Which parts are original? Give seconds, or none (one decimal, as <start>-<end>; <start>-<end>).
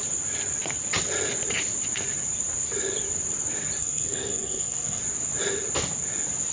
0.0-3.8; 5.0-6.5